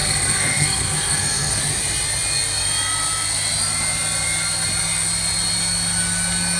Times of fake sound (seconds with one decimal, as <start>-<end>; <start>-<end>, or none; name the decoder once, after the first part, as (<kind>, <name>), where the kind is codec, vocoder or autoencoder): 0.0-1.6 (codec, SNAC)